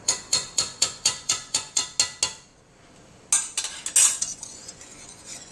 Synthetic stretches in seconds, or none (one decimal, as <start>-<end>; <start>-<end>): 0.0-1.8; 4.0-5.5